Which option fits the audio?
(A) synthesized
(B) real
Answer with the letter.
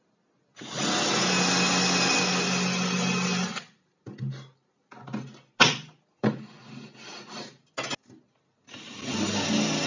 B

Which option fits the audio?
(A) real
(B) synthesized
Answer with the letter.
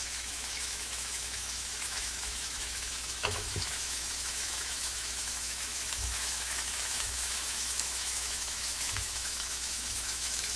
B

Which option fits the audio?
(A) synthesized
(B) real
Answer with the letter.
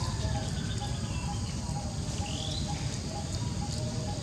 B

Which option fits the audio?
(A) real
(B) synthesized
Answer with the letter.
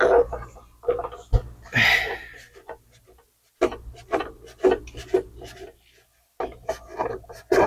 A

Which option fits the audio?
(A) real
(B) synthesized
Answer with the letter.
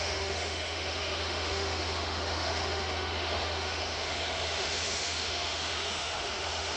B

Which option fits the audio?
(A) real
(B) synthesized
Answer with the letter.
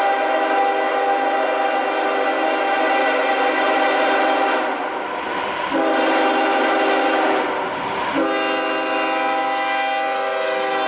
A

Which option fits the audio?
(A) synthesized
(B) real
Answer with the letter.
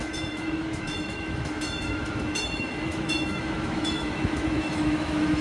A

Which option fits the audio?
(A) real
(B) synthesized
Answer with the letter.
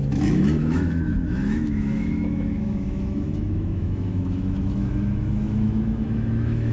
B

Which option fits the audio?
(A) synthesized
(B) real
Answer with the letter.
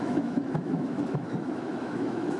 A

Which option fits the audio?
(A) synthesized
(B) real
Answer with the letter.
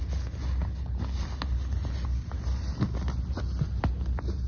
B